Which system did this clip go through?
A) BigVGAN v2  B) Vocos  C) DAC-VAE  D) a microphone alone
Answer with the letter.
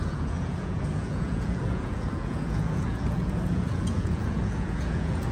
B